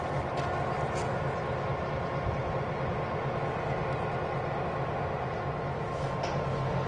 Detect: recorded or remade recorded